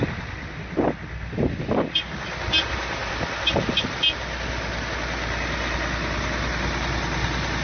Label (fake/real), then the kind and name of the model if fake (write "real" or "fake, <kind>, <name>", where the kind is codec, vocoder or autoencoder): real